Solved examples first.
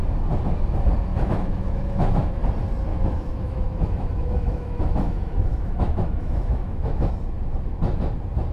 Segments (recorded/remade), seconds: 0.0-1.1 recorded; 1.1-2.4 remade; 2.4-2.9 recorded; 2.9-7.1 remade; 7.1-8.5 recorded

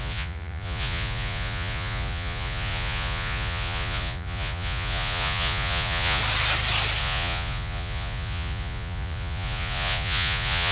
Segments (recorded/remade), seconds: 0.0-6.2 remade; 6.2-7.0 recorded; 7.0-10.7 remade

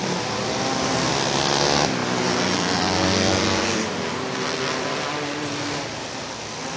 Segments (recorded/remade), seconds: 0.0-2.0 recorded; 2.0-5.1 remade; 5.1-6.8 recorded

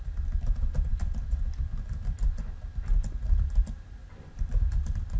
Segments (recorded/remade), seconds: 0.0-4.0 recorded; 4.0-5.2 remade

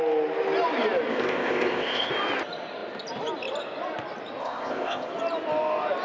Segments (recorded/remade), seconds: 0.0-1.1 recorded; 1.1-2.1 remade; 2.1-4.4 recorded; 4.4-5.1 remade; 5.1-6.0 recorded

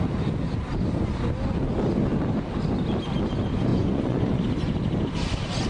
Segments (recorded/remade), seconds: 0.0-3.7 recorded; 3.7-4.4 remade; 4.4-5.7 recorded

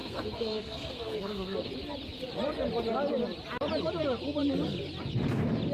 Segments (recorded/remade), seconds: 0.0-1.7 remade; 1.7-5.7 recorded